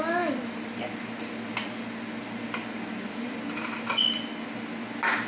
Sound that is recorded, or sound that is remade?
recorded